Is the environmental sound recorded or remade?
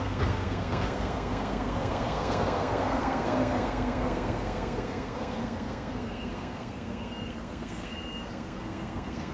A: remade